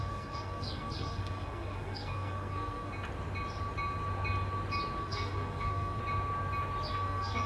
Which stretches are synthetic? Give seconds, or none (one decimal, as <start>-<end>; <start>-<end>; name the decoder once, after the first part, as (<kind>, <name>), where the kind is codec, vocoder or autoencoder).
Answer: 0.0-2.9 (codec, SNAC); 5.0-6.0; 6.9-7.5